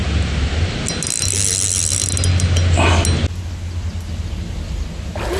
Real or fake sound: real